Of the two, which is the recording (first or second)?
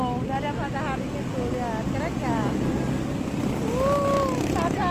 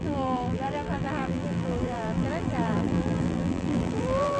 first